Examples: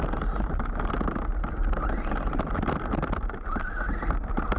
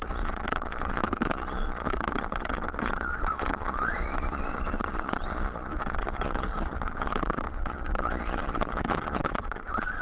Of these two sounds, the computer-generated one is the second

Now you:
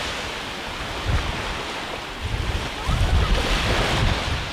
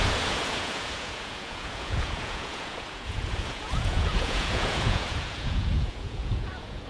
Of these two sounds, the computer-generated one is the second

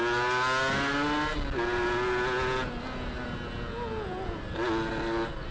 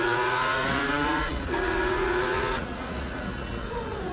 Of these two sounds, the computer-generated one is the second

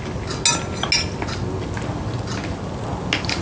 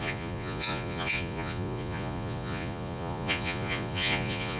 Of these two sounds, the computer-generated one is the second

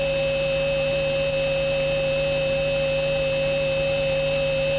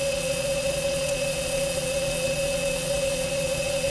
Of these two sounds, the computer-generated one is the second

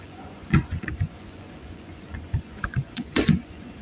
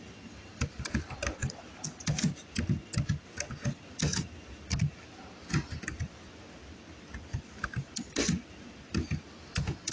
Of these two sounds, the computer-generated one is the first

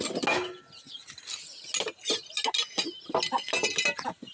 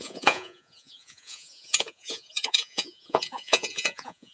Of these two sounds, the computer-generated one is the second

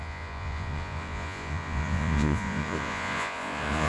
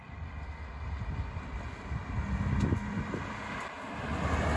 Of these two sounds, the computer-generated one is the first